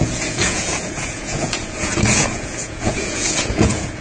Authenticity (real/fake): fake